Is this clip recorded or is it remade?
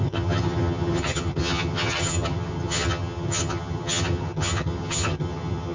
remade